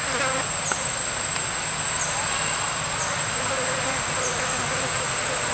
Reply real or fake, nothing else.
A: real